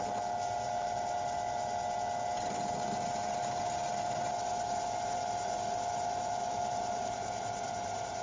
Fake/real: real